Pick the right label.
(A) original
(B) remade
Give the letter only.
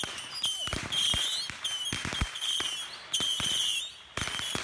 A